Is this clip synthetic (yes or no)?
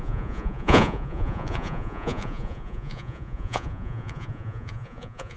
yes